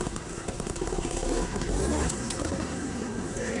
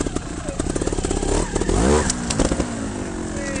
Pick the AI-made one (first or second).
first